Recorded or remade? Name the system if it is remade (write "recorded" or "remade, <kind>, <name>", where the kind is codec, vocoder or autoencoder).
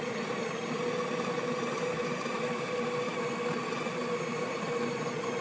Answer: recorded